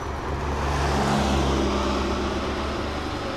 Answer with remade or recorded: recorded